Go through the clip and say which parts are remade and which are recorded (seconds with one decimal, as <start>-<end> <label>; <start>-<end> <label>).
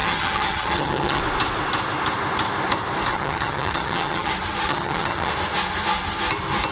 0.0-1.2 remade; 1.2-3.1 recorded; 3.1-4.3 remade; 4.3-4.7 recorded; 4.7-5.3 remade; 5.3-6.7 recorded